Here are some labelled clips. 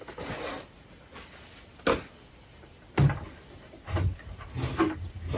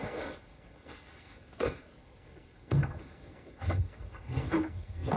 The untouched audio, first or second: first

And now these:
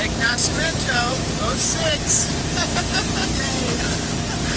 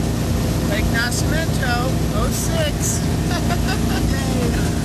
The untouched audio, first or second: second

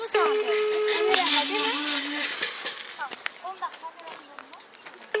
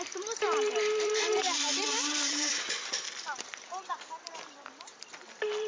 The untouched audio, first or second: first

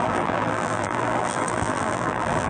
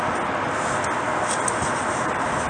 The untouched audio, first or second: second